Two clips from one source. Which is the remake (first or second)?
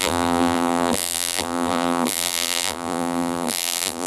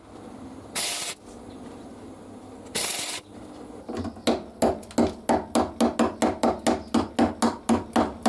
first